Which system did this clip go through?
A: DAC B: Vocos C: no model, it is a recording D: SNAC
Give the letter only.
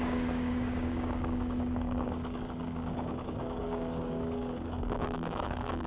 A